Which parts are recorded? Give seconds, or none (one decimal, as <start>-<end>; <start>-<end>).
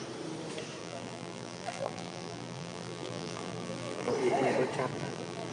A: 0.0-0.8; 4.1-4.9